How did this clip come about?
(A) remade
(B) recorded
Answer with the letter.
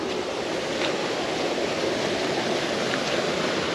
B